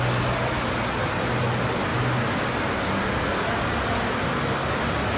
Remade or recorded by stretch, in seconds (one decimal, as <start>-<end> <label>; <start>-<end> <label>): 0.0-5.2 recorded

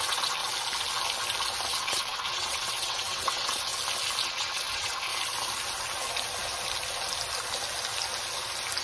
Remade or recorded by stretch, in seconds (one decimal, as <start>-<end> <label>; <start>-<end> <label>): 0.0-0.4 remade; 0.4-1.7 recorded; 1.7-3.7 remade; 3.7-4.2 recorded; 4.2-5.1 remade; 5.1-8.8 recorded